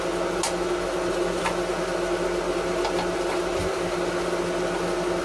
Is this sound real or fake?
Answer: real